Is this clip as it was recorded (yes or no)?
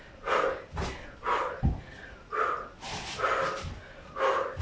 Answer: yes